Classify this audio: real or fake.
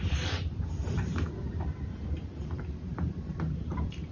fake